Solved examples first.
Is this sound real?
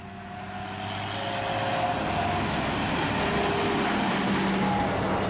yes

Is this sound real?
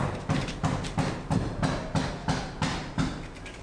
yes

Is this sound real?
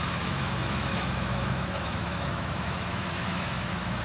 no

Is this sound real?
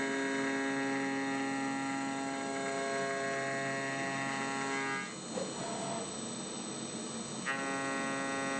yes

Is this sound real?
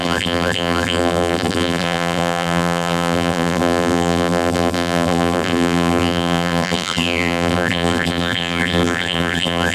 no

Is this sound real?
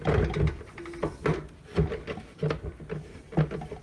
yes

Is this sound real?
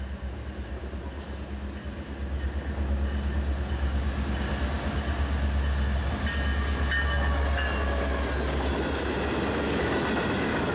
yes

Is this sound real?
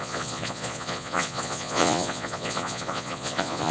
no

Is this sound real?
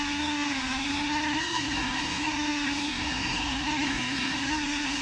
no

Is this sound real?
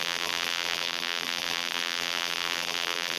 no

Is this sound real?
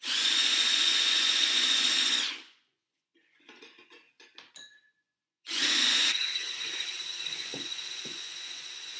no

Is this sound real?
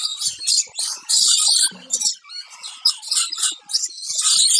yes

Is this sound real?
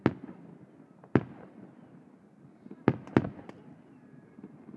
yes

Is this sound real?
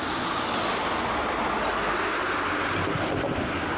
yes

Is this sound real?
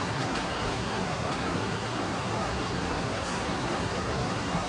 no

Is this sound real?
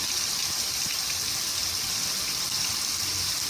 yes